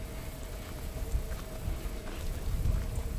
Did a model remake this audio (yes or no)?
no